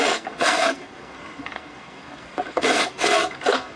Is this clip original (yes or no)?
no